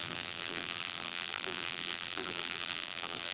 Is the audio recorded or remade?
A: remade